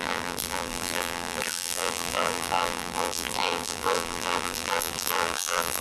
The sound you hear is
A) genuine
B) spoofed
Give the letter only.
B